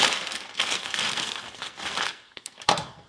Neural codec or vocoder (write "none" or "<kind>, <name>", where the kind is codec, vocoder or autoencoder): codec, SNAC